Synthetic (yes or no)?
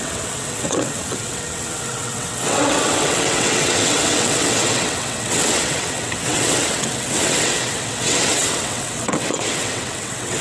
yes